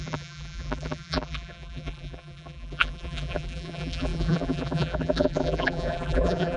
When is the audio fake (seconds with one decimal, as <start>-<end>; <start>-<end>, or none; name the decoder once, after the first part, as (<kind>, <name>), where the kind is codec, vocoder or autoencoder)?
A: 0.0-6.6 (vocoder, BigVGAN v2)